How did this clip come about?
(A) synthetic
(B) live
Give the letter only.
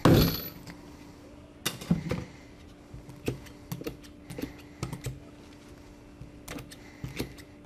B